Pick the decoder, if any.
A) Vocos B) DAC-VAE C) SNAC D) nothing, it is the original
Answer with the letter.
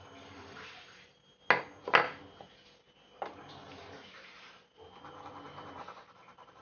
D